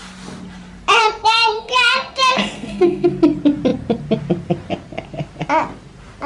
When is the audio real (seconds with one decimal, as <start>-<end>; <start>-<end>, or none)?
0.0-1.0; 3.1-6.3